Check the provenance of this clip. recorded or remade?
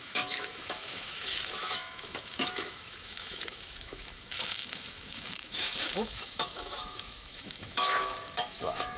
remade